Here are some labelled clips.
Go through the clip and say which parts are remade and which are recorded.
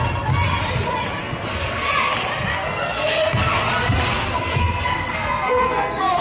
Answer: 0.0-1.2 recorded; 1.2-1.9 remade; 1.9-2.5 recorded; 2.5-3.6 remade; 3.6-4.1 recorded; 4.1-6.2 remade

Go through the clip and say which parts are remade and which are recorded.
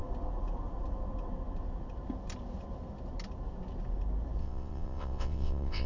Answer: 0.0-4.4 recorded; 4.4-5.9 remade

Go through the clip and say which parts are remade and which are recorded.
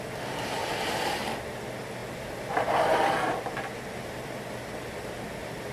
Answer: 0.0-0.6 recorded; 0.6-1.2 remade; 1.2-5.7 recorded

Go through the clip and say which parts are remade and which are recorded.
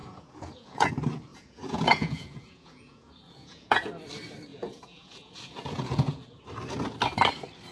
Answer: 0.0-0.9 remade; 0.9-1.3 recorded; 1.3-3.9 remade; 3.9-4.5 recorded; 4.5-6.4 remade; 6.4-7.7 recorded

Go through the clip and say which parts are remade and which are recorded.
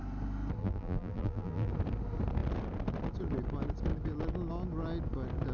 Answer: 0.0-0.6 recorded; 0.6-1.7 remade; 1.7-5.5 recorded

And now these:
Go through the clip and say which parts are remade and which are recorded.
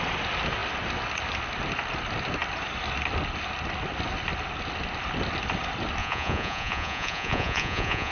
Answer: 0.0-6.0 recorded; 6.0-8.1 remade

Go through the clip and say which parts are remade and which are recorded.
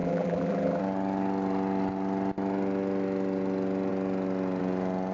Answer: 0.0-0.8 remade; 0.8-5.1 recorded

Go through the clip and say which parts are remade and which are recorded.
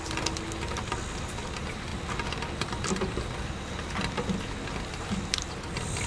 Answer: 0.0-6.1 recorded